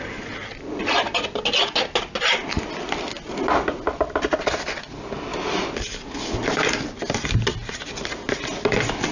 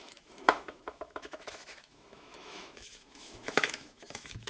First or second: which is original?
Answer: first